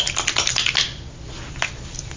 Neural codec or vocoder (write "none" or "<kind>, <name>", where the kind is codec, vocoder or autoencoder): none